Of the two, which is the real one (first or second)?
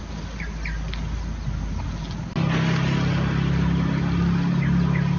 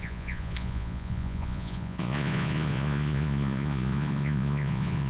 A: first